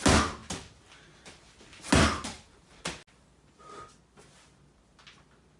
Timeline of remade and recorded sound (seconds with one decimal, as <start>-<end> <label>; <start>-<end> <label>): 0.0-5.6 recorded